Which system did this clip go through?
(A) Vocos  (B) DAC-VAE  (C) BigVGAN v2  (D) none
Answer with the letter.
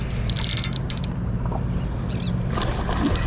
D